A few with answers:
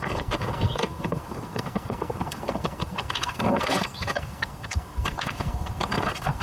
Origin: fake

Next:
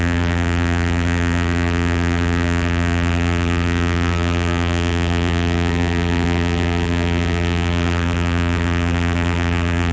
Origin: fake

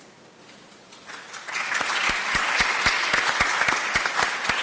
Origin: real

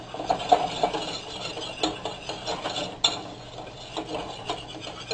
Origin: real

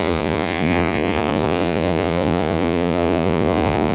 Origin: fake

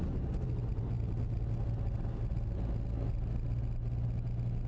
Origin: real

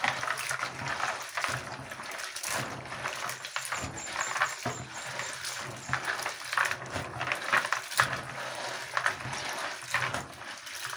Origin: real